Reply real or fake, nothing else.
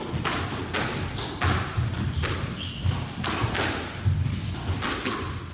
real